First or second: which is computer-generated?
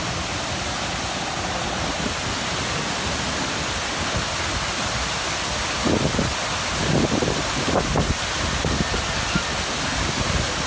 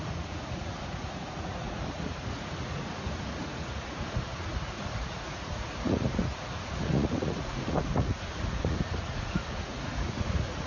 second